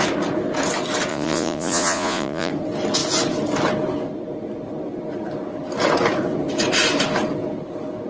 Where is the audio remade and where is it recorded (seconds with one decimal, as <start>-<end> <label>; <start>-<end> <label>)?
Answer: 0.0-1.1 recorded; 1.1-2.5 remade; 2.5-8.1 recorded